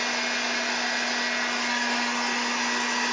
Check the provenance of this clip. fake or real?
real